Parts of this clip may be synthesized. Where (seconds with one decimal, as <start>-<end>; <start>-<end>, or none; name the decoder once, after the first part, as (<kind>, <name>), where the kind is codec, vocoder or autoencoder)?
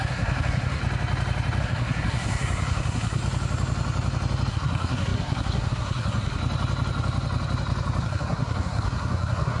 0.0-0.8 (codec, SNAC); 1.6-3.2; 4.5-6.4; 8.0-9.6